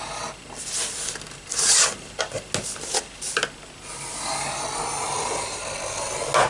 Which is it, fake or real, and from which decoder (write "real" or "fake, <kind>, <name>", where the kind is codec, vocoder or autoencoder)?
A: real